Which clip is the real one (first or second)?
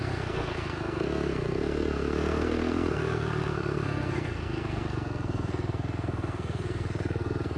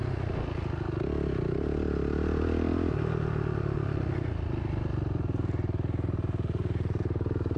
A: second